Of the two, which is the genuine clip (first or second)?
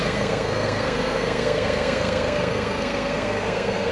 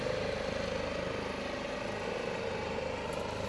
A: second